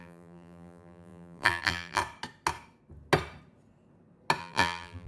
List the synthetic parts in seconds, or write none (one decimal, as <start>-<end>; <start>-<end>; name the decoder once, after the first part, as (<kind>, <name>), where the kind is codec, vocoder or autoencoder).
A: 0.0-2.0 (vocoder, BigVGAN v2); 4.4-5.1